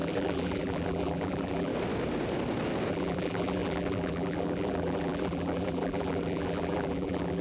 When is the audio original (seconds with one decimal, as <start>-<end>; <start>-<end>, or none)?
1.7-2.9